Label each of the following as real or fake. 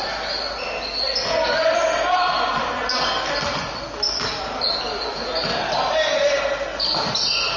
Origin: real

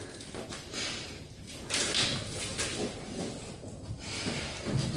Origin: real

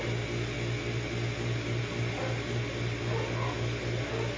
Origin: real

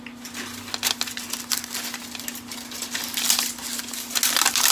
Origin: real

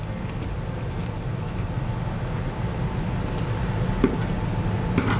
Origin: real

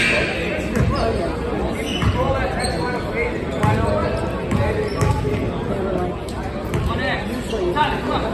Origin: real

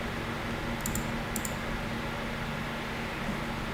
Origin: real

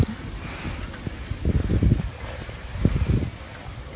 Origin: real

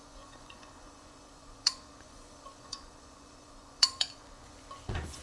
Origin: fake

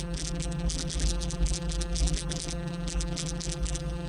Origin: fake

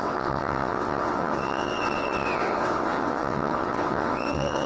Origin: fake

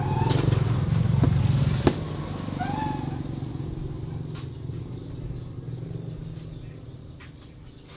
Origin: real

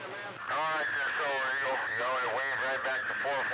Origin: real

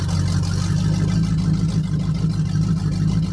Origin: real